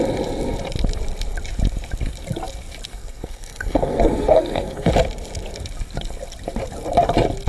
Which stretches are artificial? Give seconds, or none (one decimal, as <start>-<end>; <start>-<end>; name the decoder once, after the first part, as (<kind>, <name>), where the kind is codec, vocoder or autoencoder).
2.9-4.9 (codec, SNAC)